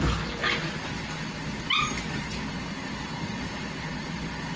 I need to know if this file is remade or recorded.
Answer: recorded